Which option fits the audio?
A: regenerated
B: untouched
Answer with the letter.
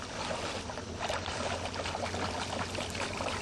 B